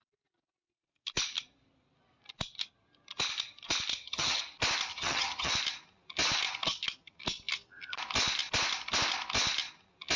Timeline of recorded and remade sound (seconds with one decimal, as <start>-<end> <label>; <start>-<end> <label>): 0.0-3.9 recorded; 3.9-4.4 remade; 4.4-4.9 recorded; 4.9-5.5 remade; 5.5-10.2 recorded